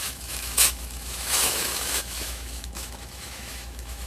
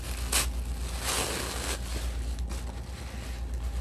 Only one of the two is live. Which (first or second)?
second